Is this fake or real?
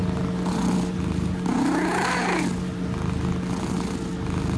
real